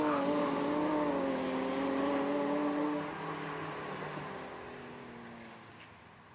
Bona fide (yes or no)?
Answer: yes